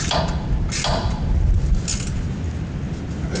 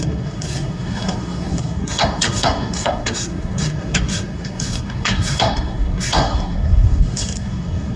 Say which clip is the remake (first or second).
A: second